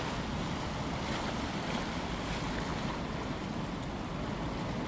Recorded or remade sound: recorded